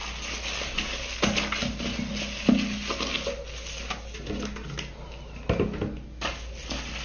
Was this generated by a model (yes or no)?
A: no